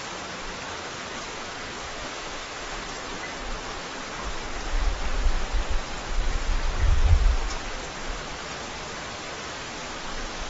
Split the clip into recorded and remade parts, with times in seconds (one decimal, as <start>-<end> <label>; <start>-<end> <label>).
0.0-1.8 recorded; 1.8-2.8 remade; 2.8-10.5 recorded